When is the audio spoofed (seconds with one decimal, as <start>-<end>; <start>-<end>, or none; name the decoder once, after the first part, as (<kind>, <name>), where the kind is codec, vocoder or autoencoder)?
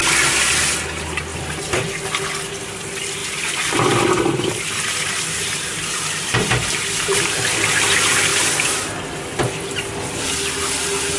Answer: 1.3-1.9 (vocoder, BigVGAN v2); 3.2-7.4